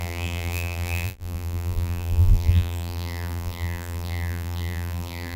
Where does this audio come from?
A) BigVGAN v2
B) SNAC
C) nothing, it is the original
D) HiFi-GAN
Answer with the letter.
A